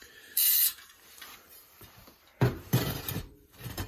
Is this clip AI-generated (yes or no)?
yes